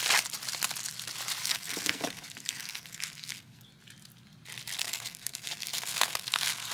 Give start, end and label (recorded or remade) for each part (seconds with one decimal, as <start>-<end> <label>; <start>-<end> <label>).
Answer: 0.0-1.4 recorded; 1.4-3.6 remade; 3.6-4.8 recorded; 4.8-6.7 remade